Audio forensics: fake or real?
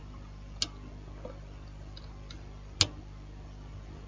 real